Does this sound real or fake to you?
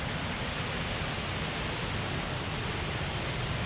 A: real